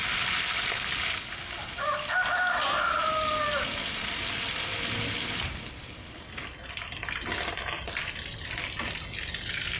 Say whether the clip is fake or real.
real